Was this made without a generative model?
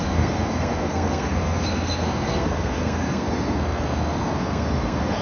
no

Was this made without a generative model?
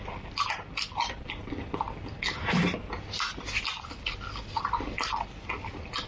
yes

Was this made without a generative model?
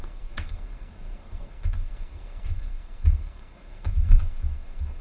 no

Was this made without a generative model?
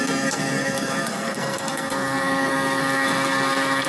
no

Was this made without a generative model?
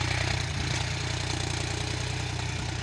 yes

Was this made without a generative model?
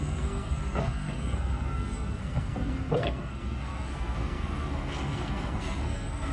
no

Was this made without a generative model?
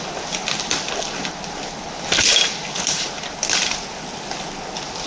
yes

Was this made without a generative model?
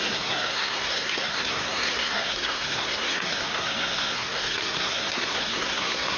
no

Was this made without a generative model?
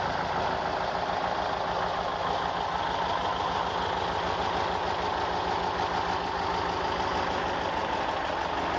yes